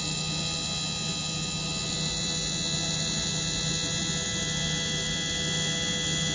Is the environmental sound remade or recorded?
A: recorded